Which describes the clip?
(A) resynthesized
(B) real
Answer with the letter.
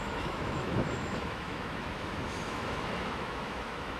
A